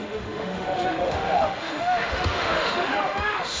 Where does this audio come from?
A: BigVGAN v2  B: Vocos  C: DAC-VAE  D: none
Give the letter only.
C